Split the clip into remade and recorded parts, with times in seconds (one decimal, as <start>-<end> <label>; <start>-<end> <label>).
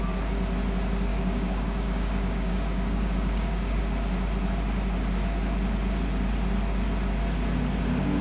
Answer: 0.0-1.1 recorded; 1.1-3.8 remade; 3.8-8.2 recorded